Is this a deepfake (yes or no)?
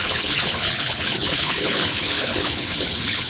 yes